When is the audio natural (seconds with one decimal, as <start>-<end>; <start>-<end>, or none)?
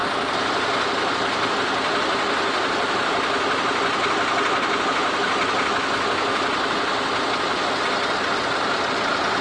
0.0-9.4